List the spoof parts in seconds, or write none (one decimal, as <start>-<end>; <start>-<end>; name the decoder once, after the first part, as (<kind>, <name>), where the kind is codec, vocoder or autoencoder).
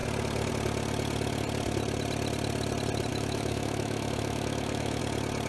3.1-5.0 (autoencoder, DAC-VAE)